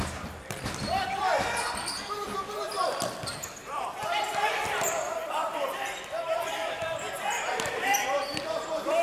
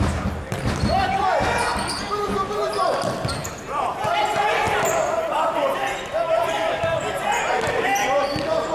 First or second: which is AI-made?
first